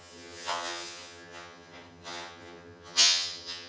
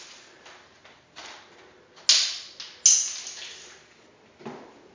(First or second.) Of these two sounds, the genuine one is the second